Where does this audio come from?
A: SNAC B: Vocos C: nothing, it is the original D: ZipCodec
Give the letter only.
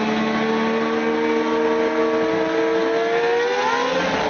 C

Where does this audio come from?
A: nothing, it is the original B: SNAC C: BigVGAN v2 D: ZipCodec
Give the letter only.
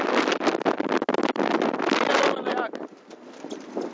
A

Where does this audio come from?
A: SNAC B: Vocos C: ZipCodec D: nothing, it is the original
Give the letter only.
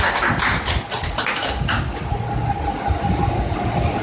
D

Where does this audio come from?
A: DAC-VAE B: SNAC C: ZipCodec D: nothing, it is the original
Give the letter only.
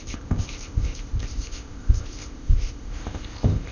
C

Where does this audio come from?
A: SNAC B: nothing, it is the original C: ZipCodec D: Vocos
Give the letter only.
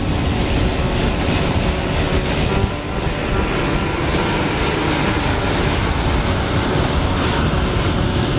B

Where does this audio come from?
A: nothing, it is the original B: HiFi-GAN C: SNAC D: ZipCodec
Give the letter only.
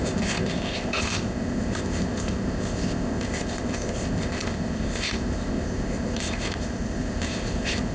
D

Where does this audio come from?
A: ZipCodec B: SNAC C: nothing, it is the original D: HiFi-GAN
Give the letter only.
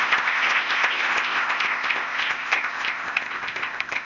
A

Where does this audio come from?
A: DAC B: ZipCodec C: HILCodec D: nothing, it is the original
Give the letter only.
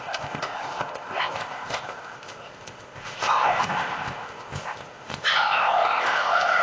B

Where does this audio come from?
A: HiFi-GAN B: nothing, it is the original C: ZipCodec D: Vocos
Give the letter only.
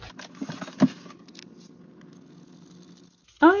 B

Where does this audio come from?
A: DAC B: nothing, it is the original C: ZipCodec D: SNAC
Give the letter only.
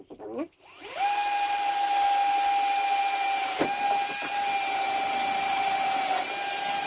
B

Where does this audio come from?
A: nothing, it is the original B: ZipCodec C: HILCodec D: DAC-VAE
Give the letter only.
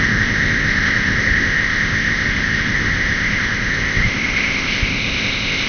B